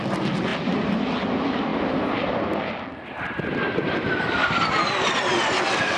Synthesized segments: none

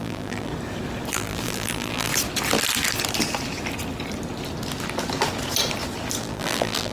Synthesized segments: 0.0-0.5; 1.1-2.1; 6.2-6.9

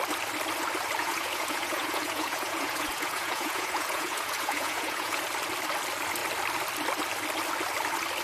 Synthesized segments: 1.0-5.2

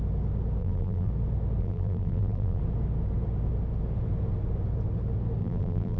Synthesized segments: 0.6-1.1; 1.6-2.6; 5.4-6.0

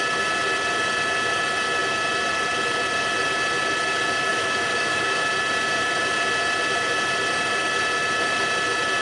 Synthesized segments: 4.3-5.3

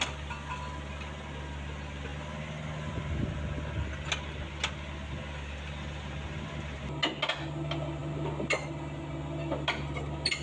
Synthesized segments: none